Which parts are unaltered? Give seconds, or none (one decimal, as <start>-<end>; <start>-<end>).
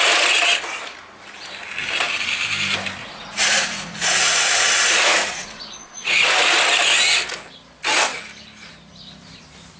0.0-3.0; 6.6-9.8